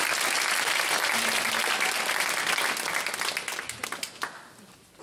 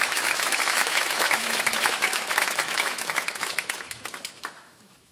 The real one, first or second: first